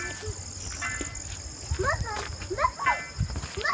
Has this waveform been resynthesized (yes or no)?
no